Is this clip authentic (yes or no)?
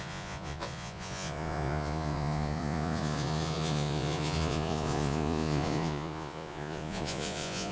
no